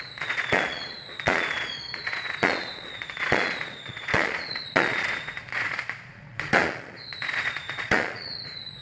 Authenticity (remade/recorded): remade